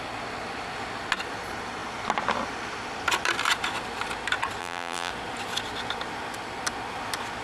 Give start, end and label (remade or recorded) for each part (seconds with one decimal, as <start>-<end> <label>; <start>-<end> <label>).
0.0-4.6 recorded; 4.6-5.1 remade; 5.1-7.4 recorded